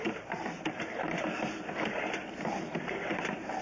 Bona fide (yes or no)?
yes